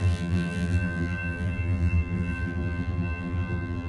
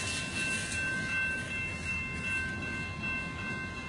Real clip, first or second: second